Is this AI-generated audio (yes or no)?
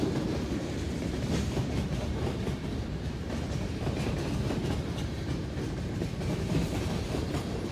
yes